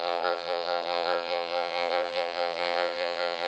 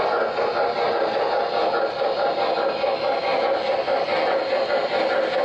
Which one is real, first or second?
second